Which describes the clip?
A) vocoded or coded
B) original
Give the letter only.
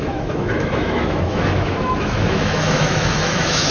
A